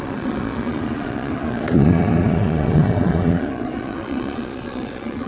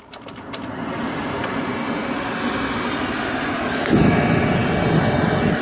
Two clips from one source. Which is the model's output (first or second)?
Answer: first